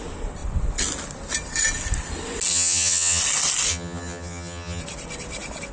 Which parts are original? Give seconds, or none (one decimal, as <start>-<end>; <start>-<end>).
0.0-2.5; 3.2-3.7; 4.8-5.7